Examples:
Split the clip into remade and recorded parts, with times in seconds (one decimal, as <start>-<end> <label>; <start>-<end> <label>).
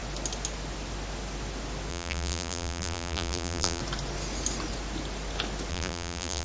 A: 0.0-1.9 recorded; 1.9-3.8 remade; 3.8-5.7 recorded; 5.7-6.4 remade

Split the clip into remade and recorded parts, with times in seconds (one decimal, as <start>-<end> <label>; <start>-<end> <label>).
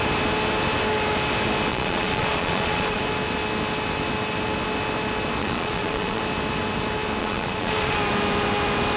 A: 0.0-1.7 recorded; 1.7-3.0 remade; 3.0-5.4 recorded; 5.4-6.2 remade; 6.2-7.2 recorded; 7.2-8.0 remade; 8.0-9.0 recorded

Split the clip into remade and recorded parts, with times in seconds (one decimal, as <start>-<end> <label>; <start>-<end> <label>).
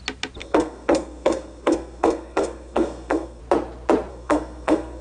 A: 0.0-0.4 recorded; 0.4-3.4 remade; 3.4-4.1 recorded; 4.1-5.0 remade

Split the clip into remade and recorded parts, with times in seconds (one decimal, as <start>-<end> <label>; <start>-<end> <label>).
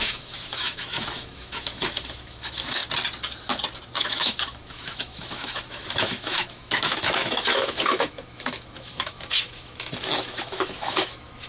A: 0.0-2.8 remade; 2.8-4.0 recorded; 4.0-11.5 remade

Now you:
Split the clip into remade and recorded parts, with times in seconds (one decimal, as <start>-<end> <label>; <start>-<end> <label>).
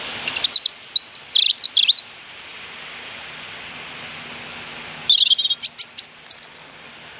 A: 0.0-7.2 recorded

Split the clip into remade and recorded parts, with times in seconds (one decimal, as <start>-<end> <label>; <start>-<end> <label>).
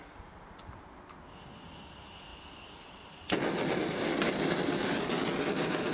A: 0.0-5.9 recorded